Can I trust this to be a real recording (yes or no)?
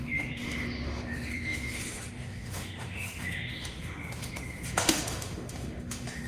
no